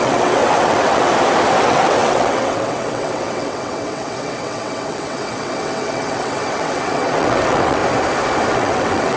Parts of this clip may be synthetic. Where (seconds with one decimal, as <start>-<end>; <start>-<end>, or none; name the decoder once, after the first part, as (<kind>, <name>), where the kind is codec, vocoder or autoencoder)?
0.0-1.1 (vocoder, WaveNeXt); 1.6-7.8; 8.5-9.2